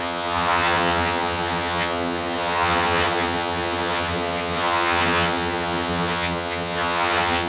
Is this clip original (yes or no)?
no